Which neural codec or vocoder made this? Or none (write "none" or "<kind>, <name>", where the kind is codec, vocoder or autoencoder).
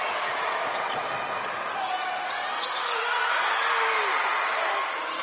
none